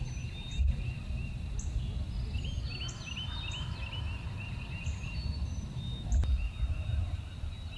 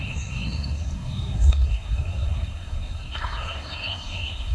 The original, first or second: first